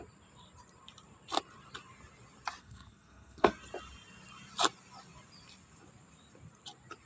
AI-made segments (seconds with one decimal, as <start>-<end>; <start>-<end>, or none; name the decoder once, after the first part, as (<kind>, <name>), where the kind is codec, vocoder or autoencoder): 2.6-3.5 (codec, SNAC)